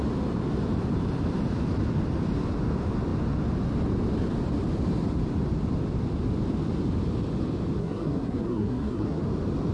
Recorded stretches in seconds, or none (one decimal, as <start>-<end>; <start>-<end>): 0.0-7.8; 9.2-9.7